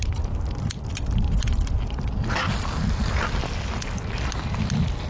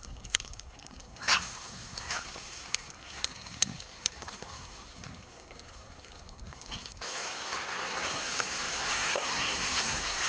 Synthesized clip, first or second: second